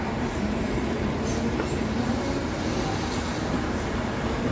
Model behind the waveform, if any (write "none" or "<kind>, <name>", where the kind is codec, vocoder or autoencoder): vocoder, BigVGAN v2